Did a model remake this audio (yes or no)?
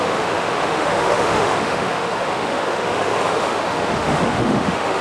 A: yes